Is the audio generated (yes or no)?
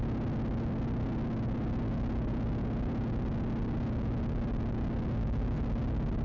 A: no